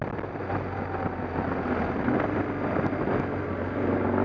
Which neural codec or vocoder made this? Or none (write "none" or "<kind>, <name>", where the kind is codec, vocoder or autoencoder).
none